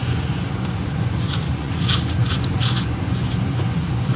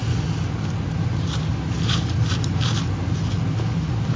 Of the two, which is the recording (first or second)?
second